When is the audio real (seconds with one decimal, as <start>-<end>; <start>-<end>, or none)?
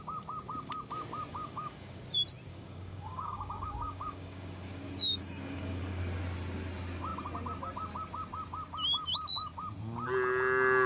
0.0-1.3; 2.0-2.5; 6.0-10.9